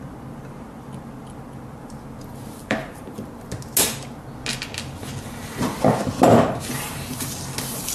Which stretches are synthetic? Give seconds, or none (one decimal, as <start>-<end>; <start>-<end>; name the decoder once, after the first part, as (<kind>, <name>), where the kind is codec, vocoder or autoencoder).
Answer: 2.6-3.2 (vocoder, BigVGAN v2); 6.3-7.4